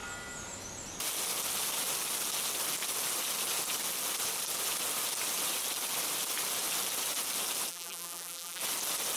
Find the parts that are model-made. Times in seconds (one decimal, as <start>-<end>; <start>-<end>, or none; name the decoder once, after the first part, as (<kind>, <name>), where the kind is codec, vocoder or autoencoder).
7.7-8.6 (vocoder, BigVGAN v2)

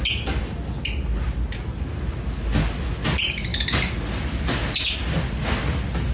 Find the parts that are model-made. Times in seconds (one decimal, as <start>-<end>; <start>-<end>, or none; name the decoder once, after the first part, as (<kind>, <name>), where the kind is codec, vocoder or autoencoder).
none

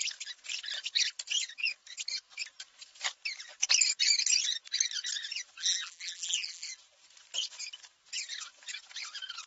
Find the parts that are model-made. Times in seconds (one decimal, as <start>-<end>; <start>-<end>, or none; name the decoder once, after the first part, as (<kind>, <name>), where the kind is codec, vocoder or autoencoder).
5.6-6.7 (vocoder, BigVGAN v2)

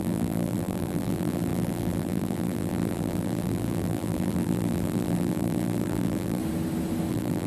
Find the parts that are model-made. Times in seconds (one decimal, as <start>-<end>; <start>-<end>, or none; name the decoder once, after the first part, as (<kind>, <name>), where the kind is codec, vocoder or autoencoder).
0.0-6.4 (vocoder, BigVGAN v2); 7.1-7.5

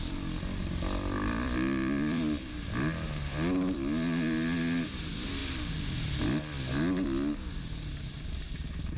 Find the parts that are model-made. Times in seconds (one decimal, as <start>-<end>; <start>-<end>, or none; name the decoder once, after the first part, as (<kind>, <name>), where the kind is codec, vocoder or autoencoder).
1.2-2.7 (vocoder, BigVGAN v2); 5.4-6.2

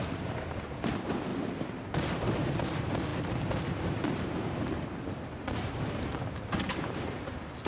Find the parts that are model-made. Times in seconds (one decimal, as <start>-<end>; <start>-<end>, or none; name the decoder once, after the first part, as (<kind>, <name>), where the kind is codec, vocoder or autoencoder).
0.0-7.7 (vocoder, BigVGAN v2)